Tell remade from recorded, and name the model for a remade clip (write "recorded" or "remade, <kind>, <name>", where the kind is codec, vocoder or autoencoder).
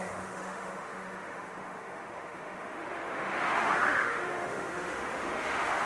remade, autoencoder, DAC-VAE